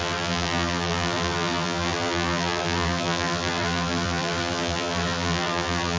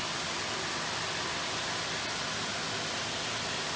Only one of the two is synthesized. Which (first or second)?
first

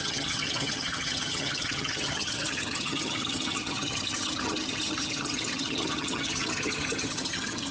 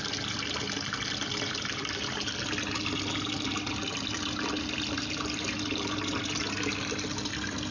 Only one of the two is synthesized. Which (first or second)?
first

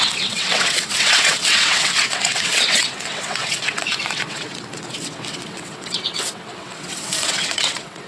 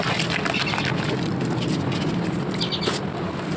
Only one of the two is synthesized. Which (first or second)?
first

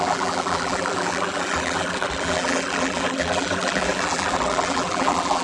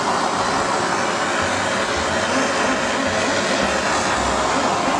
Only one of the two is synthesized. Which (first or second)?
first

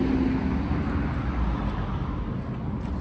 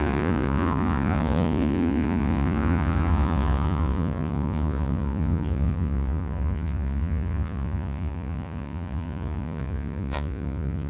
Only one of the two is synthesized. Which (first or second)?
second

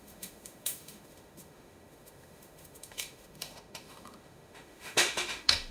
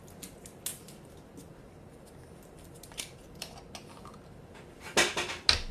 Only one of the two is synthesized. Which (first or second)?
first